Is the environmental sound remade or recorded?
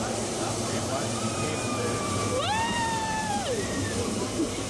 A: remade